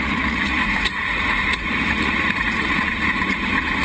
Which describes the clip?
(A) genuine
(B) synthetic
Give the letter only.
B